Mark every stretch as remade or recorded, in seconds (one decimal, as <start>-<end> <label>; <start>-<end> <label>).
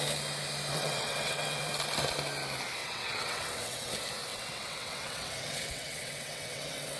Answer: 0.0-0.7 recorded; 0.7-1.7 remade; 1.7-2.8 recorded; 2.8-3.9 remade; 3.9-4.3 recorded; 4.3-7.0 remade